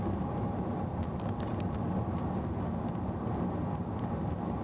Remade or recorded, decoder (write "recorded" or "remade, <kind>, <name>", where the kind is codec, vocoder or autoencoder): recorded